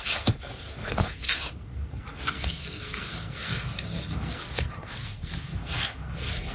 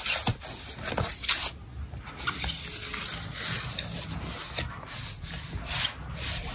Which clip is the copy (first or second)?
first